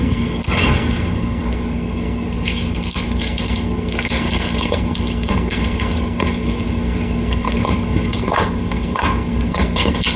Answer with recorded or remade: remade